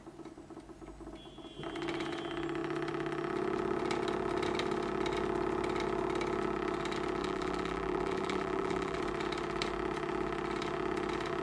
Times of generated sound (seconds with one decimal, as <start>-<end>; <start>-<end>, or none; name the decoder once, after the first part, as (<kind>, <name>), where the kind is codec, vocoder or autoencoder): 7.2-9.0 (vocoder, BigVGAN v2)